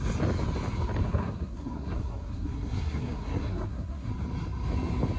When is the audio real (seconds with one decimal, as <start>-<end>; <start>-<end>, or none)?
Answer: 0.0-1.0; 4.1-5.2